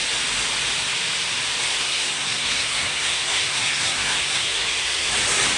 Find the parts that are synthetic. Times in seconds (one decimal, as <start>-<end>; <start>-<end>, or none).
1.7-5.1